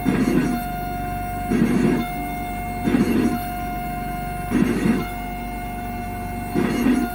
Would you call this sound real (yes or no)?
yes